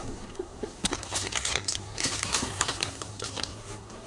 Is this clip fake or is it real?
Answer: fake